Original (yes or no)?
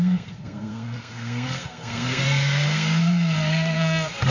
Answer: no